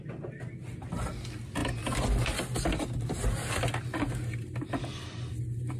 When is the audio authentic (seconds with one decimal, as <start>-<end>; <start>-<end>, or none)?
0.0-5.8